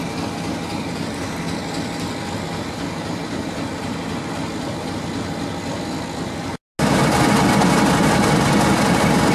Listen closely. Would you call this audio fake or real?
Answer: real